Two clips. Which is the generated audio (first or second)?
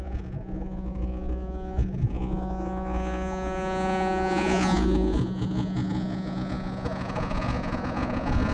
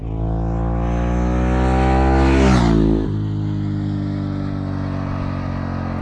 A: first